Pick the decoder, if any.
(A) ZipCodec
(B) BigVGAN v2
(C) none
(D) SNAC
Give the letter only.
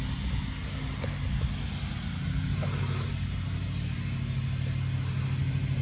C